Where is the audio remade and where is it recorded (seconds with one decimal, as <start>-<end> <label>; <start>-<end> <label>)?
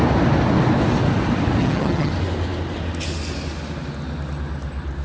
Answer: 0.0-1.6 recorded; 1.6-2.1 remade; 2.1-5.0 recorded